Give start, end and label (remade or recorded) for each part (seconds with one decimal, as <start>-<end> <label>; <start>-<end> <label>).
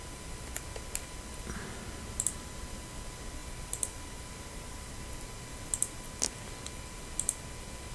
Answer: 0.0-3.4 recorded; 3.4-4.9 remade; 4.9-7.9 recorded